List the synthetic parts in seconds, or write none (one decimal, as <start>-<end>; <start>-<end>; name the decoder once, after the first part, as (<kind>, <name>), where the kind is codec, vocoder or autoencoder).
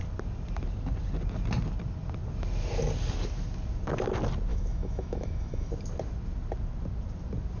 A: 4.5-5.7 (autoencoder, DAC-VAE)